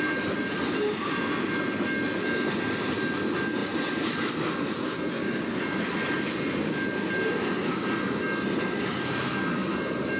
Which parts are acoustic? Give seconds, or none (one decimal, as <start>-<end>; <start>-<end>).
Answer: 0.0-10.2